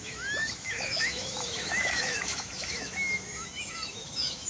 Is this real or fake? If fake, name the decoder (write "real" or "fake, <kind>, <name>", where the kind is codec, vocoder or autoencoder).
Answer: fake, autoencoder, DAC-VAE